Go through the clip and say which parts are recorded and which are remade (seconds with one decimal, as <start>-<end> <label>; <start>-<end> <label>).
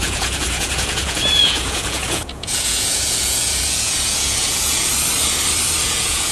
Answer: 0.0-4.9 remade; 4.9-5.8 recorded; 5.8-6.3 remade